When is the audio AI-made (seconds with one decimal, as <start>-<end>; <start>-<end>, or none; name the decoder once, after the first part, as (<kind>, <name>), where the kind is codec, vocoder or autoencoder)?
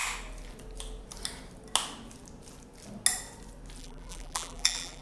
3.8-5.0 (vocoder, BigVGAN v2)